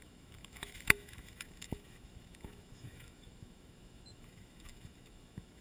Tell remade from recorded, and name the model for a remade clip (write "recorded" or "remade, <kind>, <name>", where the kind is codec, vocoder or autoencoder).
remade, autoencoder, DAC-VAE